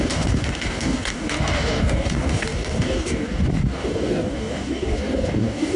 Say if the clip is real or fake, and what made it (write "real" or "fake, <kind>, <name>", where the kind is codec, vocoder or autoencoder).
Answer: fake, codec, DAC